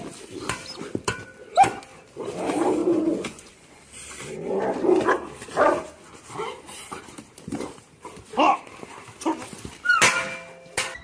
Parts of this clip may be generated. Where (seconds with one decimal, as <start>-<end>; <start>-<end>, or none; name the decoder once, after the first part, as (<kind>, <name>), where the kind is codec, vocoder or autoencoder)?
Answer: 2.8-3.8 (vocoder, Vocos)